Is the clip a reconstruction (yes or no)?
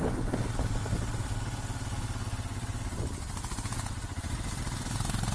no